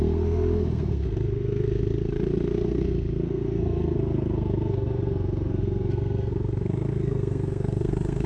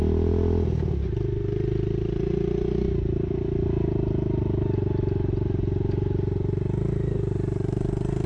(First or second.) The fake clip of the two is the first